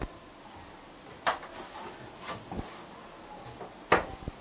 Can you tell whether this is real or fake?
real